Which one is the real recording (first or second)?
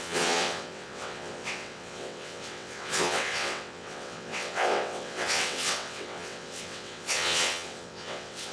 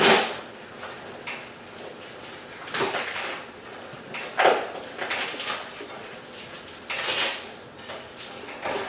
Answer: second